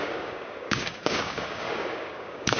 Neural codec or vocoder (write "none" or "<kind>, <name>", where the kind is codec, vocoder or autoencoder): codec, DAC